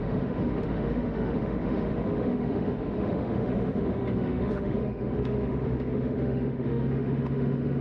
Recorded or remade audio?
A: remade